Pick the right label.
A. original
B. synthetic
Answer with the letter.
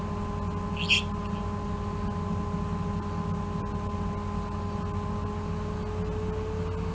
A